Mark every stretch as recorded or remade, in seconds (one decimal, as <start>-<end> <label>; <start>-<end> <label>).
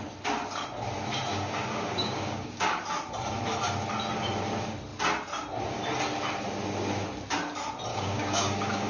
0.0-1.3 recorded; 1.3-2.7 remade; 2.7-7.9 recorded; 7.9-8.9 remade